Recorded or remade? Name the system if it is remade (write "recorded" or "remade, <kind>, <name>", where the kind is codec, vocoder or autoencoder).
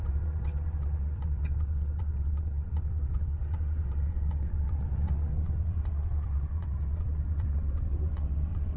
remade, vocoder, WaveNeXt